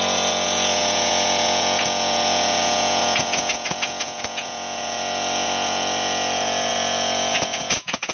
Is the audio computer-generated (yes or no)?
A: yes